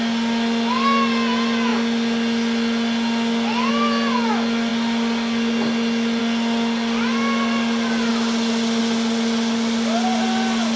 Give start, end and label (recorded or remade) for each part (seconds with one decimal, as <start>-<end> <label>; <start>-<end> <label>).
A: 0.0-10.8 recorded